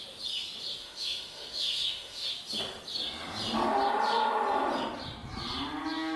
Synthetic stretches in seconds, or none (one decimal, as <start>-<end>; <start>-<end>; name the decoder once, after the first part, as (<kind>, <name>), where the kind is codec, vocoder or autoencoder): 0.8-2.3 (autoencoder, DAC-VAE)